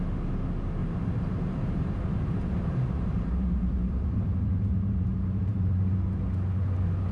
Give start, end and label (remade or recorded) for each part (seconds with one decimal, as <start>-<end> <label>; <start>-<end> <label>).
0.0-0.8 recorded; 0.8-5.1 remade; 5.1-5.5 recorded; 5.5-6.2 remade; 6.2-7.1 recorded